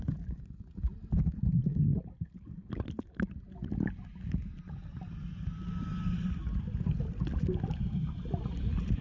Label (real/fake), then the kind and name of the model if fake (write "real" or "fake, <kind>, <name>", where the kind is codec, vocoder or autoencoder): real